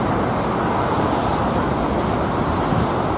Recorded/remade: recorded